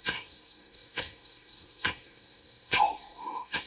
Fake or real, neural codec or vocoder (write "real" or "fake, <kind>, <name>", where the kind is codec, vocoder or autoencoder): fake, codec, SNAC